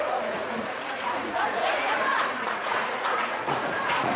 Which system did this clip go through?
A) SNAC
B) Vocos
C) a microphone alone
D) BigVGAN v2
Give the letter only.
B